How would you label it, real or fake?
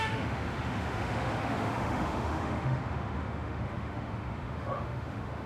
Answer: fake